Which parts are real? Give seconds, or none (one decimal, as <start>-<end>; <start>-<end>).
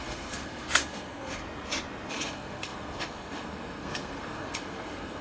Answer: 1.4-2.1